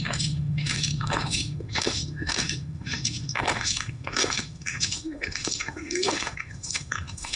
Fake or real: fake